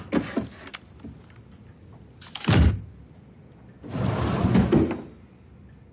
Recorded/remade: recorded